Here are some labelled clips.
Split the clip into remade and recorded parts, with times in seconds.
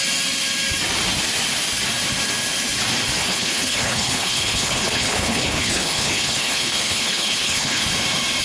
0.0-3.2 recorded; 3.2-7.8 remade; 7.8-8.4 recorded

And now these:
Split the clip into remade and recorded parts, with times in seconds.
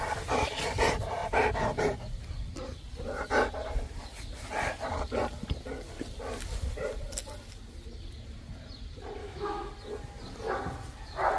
0.0-9.2 recorded; 9.2-9.7 remade; 9.7-11.4 recorded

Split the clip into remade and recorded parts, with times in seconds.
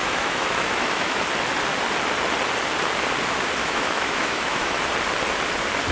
0.0-1.2 remade; 1.2-3.6 recorded; 3.6-4.9 remade; 4.9-5.9 recorded